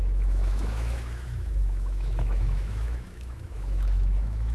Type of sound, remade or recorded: remade